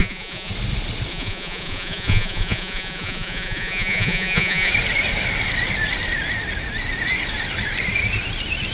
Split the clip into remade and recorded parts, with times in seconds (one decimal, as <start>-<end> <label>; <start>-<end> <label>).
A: 0.0-0.5 remade; 0.5-1.1 recorded; 1.1-4.7 remade; 4.7-8.7 recorded